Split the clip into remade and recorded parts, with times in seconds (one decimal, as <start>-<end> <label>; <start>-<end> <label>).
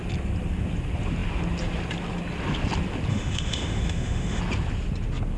0.0-3.1 recorded; 3.1-4.4 remade; 4.4-5.4 recorded